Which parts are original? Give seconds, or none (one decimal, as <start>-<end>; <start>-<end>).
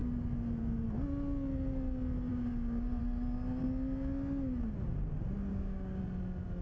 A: 0.0-2.3; 3.0-5.5; 6.0-6.6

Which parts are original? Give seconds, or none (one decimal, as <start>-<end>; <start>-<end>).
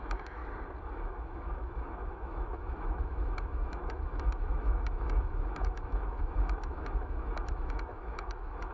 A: 0.4-0.9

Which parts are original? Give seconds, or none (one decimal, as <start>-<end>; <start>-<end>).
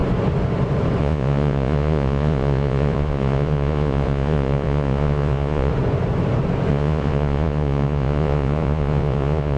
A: 0.0-1.0; 5.7-6.7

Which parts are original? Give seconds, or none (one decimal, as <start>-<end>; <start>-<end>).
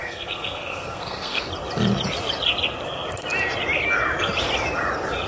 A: 1.4-5.3